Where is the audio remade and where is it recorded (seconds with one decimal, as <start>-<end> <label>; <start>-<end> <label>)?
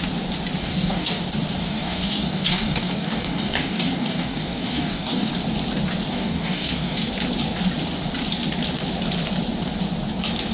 0.0-0.6 recorded; 0.6-1.2 remade; 1.2-1.6 recorded; 1.6-5.3 remade; 5.3-6.1 recorded; 6.1-7.1 remade; 7.1-10.5 recorded